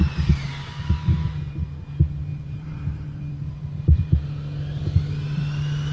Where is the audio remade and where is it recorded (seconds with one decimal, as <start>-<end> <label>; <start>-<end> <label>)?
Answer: 0.0-2.3 recorded; 2.3-4.3 remade; 4.3-5.9 recorded